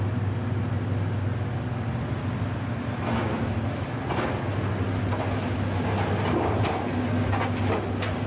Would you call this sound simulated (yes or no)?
no